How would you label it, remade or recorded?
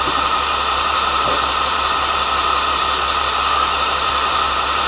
remade